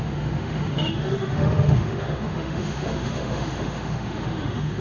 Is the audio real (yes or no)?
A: no